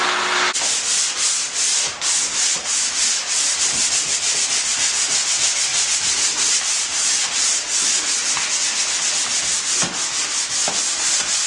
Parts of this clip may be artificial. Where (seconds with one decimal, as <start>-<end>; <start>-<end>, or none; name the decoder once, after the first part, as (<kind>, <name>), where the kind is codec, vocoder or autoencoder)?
none